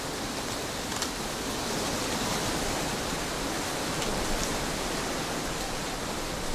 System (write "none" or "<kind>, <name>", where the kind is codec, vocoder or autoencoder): none